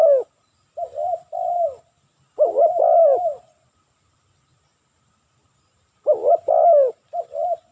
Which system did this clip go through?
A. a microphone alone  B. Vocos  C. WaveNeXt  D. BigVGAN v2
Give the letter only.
A